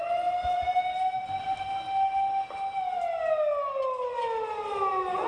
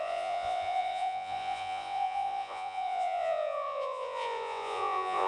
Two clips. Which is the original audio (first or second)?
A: first